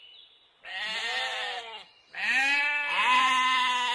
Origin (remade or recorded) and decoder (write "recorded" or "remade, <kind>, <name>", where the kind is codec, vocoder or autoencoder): recorded